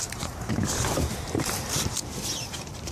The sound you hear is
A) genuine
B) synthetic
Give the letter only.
B